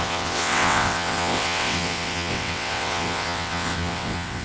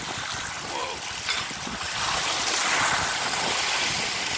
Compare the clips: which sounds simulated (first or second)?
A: first